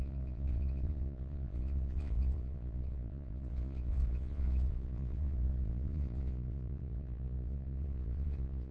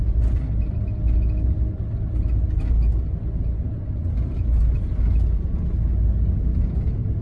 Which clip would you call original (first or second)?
second